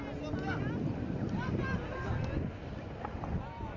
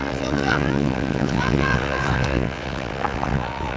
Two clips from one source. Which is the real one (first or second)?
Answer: first